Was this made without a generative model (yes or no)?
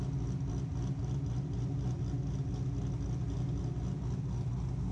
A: yes